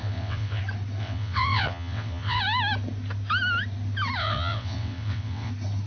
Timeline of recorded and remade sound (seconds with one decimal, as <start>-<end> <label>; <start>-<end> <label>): 0.0-0.6 remade; 0.6-1.0 recorded; 1.0-2.4 remade; 2.4-4.2 recorded; 4.2-5.5 remade; 5.5-5.9 recorded